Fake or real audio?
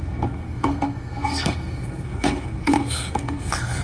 fake